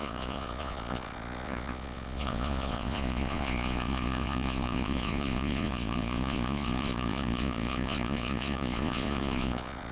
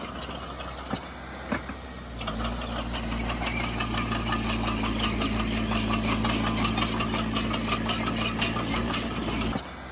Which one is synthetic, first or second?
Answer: first